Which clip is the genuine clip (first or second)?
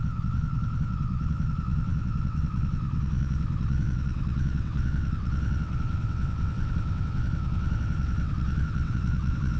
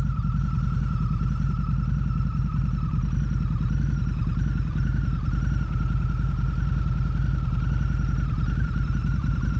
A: second